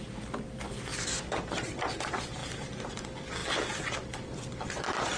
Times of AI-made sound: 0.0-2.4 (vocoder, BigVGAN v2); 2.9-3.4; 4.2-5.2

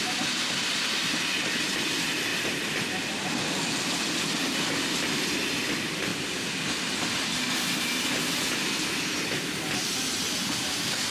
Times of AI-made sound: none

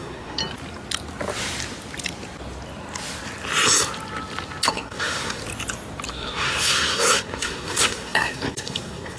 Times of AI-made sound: 0.0-0.4 (codec, SNAC); 4.7-5.4; 6.1-9.2

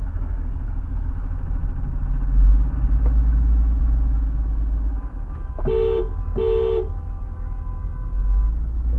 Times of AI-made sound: 0.0-1.1 (codec, SNAC)

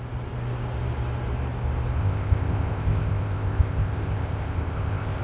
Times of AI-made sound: 2.0-5.2 (codec, ZipCodec)

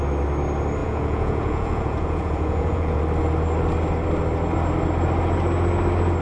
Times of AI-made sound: 0.8-3.0 (vocoder, Vocos)